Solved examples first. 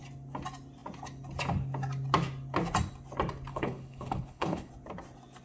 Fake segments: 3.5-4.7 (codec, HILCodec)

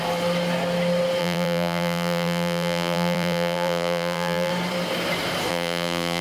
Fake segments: 1.2-4.5 (vocoder, BigVGAN v2); 5.5-6.2

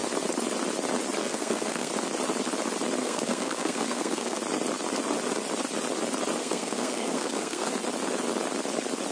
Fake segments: 1.2-1.9 (codec, SNAC); 3.0-4.4; 6.4-7.7

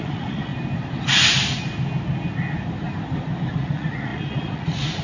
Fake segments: 0.0-0.5 (vocoder, Vocos); 3.5-5.0

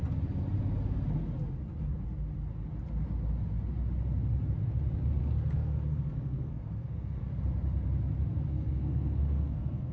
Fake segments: 5.2-7.3 (codec, SNAC); 8.5-9.9

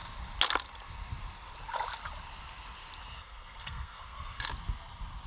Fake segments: 3.1-4.5 (codec, SNAC)

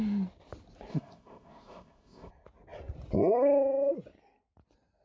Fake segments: 0.9-2.3 (codec, ZipCodec)